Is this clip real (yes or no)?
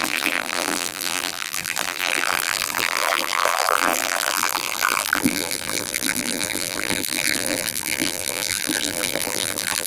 no